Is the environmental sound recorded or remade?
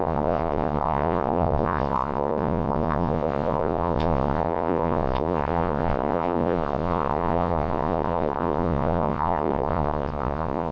remade